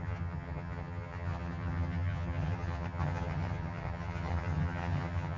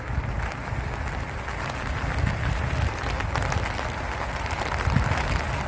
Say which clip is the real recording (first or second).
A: second